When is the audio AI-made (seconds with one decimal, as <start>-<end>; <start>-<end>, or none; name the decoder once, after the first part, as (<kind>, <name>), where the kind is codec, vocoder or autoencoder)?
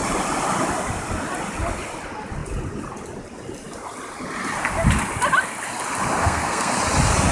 6.2-6.7 (codec, SNAC)